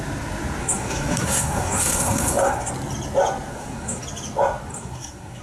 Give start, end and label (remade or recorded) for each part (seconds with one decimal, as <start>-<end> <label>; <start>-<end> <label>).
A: 0.0-0.6 recorded; 0.6-2.7 remade; 2.7-3.5 recorded; 3.5-4.0 remade; 4.0-4.7 recorded; 4.7-5.4 remade